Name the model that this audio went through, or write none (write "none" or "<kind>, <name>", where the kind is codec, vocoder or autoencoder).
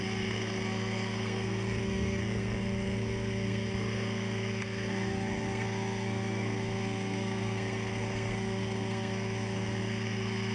codec, SNAC